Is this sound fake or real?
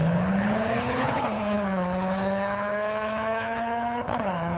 fake